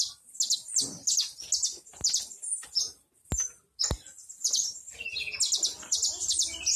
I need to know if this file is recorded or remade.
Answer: recorded